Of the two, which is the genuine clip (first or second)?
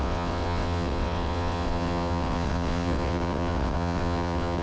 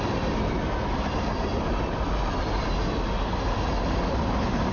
second